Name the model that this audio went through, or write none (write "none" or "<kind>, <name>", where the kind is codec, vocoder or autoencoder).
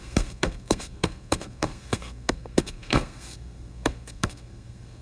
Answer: codec, SNAC